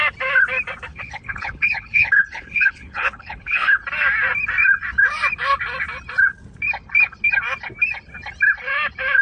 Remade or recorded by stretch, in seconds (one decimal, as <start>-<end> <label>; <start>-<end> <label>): 0.0-0.9 recorded; 0.9-3.7 remade; 3.7-9.2 recorded